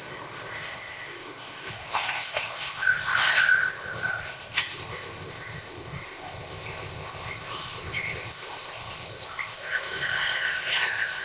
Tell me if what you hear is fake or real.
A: fake